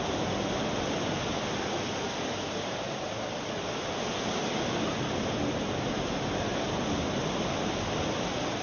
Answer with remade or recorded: recorded